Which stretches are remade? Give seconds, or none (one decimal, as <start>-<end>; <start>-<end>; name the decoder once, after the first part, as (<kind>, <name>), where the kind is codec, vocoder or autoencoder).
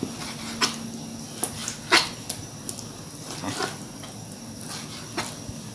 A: none